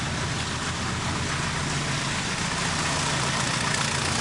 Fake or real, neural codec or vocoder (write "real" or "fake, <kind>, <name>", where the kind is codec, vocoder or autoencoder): real